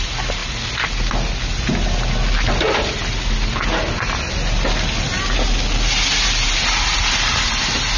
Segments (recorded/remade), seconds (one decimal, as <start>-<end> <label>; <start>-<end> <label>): 0.0-8.0 recorded